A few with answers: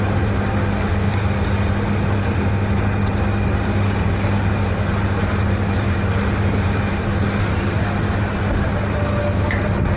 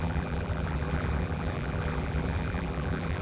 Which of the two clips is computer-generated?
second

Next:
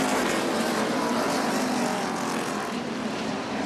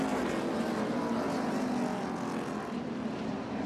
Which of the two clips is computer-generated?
first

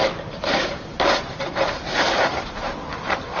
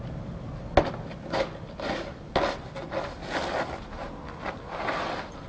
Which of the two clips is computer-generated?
first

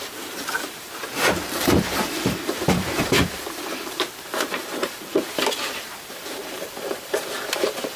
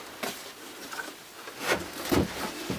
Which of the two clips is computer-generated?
first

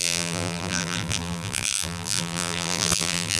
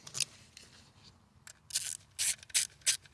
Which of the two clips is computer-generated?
first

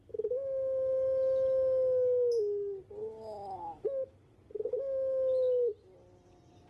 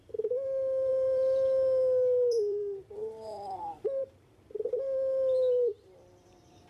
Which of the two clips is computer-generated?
second